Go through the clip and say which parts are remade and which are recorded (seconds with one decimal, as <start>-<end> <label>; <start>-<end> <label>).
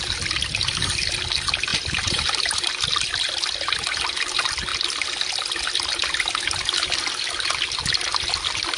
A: 0.0-1.7 recorded; 1.7-2.7 remade; 2.7-8.8 recorded